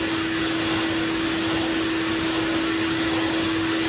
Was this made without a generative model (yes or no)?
yes